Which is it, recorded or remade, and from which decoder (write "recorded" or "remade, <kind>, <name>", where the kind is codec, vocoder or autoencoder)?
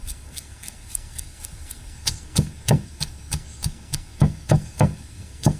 remade, codec, SNAC